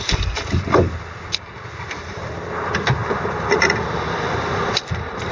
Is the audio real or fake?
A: real